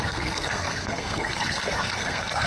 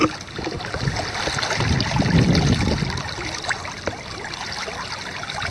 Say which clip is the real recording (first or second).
second